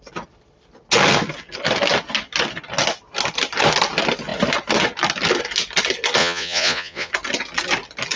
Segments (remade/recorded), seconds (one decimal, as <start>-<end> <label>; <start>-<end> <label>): 0.0-6.2 recorded; 6.2-7.1 remade; 7.1-8.2 recorded